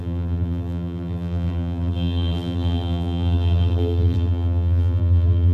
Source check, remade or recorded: remade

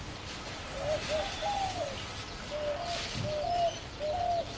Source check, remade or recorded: recorded